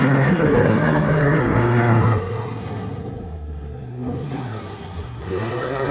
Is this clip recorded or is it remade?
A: remade